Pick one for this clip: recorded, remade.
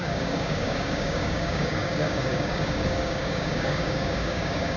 remade